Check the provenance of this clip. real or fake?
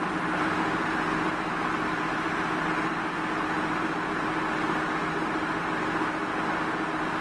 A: real